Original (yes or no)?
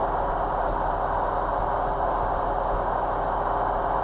yes